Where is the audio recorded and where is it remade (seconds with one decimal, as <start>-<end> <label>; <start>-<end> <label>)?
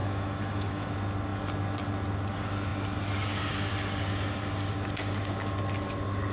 0.0-0.9 remade; 0.9-6.3 recorded